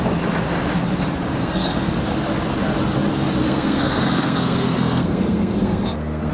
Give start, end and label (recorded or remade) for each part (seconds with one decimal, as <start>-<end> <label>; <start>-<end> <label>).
0.0-1.4 recorded; 1.4-1.9 remade; 1.9-3.4 recorded; 3.4-6.3 remade